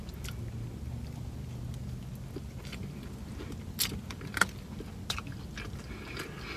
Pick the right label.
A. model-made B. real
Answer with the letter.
B